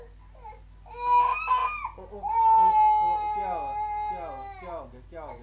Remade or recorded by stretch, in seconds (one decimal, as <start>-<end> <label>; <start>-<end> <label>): 0.0-5.4 recorded